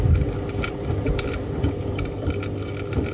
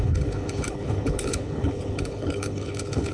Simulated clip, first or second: second